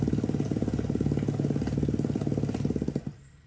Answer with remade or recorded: recorded